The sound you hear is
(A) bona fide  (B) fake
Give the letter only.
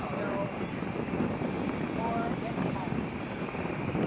A